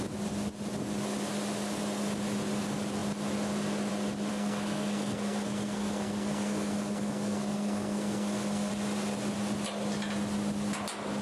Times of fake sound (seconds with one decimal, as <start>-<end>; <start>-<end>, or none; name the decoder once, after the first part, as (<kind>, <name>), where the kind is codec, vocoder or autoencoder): 4.3-8.7 (codec, SNAC)